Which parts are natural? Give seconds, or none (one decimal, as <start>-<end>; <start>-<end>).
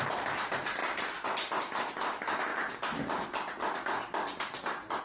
0.0-5.0